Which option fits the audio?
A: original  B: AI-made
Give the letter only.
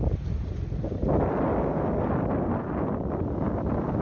A